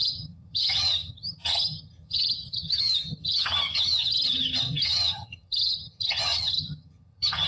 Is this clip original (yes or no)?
no